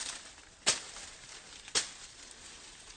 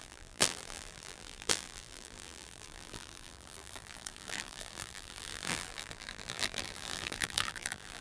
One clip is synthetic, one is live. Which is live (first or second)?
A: first